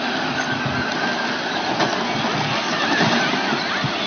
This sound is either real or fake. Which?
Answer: real